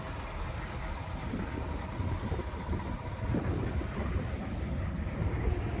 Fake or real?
real